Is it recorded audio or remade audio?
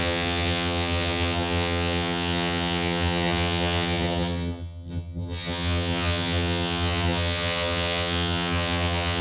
remade